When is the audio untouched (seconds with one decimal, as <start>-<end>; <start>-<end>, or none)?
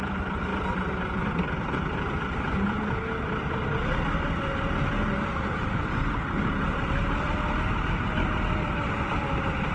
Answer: 0.5-1.3